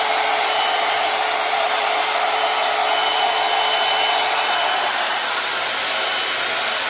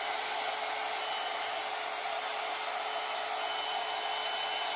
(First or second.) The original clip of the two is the second